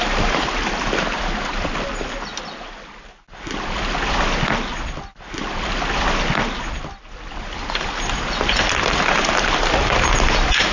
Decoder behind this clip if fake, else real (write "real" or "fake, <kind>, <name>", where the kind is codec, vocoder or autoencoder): real